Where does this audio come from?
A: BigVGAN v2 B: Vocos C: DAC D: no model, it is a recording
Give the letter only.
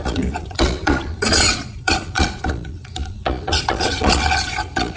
B